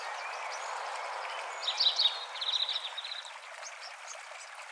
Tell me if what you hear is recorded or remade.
recorded